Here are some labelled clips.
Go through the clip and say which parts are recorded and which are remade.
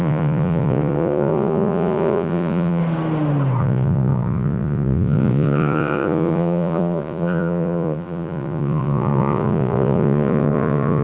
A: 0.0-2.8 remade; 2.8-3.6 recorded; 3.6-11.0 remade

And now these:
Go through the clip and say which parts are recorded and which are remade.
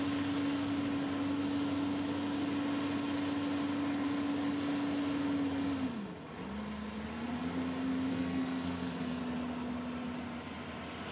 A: 0.0-8.1 recorded; 8.1-9.2 remade; 9.2-11.1 recorded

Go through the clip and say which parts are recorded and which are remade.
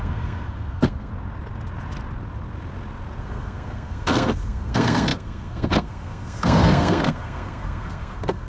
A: 0.0-1.1 remade; 1.1-3.2 recorded; 3.2-8.5 remade